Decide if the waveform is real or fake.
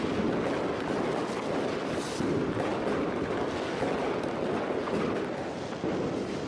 real